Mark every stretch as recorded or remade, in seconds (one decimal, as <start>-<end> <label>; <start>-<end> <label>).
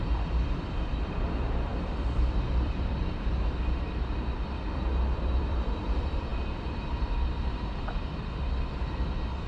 0.0-9.5 remade